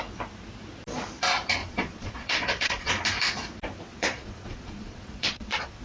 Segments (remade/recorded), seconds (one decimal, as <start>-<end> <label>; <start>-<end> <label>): 0.0-1.6 recorded; 1.6-2.9 remade; 2.9-3.9 recorded; 3.9-5.8 remade